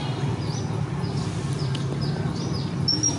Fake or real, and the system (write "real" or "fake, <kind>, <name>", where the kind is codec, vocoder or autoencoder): real